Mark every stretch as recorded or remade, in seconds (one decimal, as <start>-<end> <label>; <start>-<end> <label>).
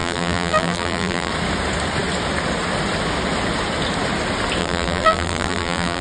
0.0-1.3 remade; 1.3-4.6 recorded; 4.6-6.0 remade